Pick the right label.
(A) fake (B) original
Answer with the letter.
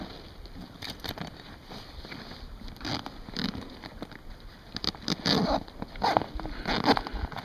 B